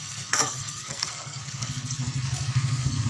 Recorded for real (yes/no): no